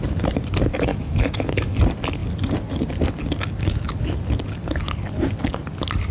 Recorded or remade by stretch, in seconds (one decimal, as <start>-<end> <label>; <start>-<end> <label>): 0.0-0.9 recorded; 0.9-1.8 remade; 1.8-6.1 recorded